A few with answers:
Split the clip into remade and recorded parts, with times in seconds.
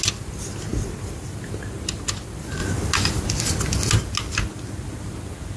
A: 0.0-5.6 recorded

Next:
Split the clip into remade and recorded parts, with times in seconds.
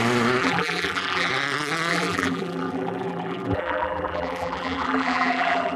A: 0.0-0.4 recorded; 0.4-1.3 remade; 1.3-1.9 recorded; 1.9-5.8 remade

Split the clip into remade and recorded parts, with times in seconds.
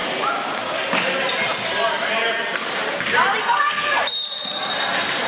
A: 0.0-3.4 recorded; 3.4-4.0 remade; 4.0-5.3 recorded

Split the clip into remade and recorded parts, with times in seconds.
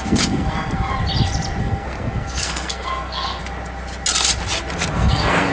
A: 0.0-0.9 remade; 0.9-1.6 recorded; 1.6-3.4 remade; 3.4-4.9 recorded; 4.9-5.5 remade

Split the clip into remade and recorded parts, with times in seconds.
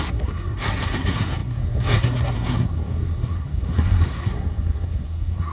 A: 0.0-5.5 remade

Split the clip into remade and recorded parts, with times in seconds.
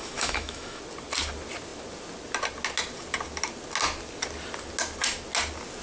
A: 0.0-0.8 remade; 0.8-5.8 recorded